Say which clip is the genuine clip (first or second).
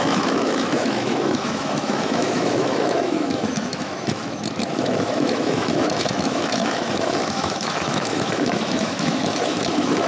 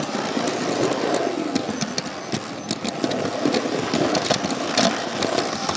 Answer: second